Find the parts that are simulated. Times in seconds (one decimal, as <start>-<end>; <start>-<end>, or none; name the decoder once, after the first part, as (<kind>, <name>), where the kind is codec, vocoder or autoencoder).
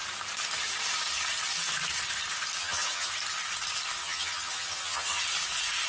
2.6-3.1 (vocoder, HiFi-GAN); 4.0-5.2